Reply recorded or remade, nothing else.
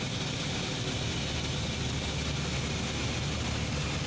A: recorded